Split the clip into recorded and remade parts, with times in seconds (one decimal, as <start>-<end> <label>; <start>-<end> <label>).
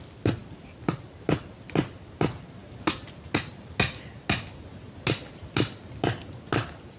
0.0-7.0 recorded